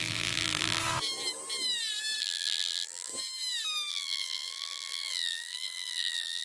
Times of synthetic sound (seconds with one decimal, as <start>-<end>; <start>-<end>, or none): 0.0-0.8; 2.2-3.1; 3.9-6.4